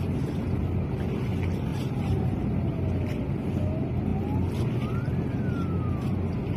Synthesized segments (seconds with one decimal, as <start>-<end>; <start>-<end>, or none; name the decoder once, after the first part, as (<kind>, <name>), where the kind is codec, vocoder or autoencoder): 1.7-2.8 (vocoder, BigVGAN v2)